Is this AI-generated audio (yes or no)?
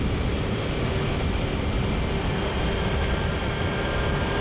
no